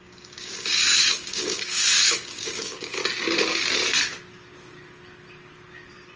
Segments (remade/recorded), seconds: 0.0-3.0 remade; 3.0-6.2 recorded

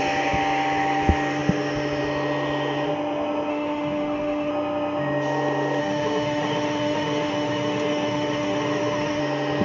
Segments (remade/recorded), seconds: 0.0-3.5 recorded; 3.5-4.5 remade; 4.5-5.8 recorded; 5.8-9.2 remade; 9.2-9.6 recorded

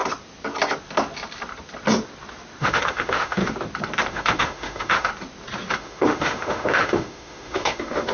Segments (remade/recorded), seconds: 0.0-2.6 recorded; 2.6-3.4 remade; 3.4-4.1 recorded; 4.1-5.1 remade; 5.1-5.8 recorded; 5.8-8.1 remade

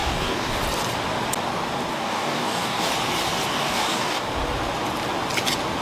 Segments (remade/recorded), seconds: 0.0-0.6 remade; 0.6-1.9 recorded; 1.9-2.9 remade; 2.9-3.5 recorded; 3.5-4.3 remade; 4.3-5.8 recorded

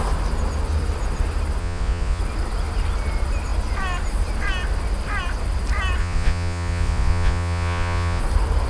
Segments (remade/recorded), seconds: 0.0-1.6 recorded; 1.6-2.2 remade; 2.2-6.0 recorded; 6.0-8.2 remade; 8.2-8.7 recorded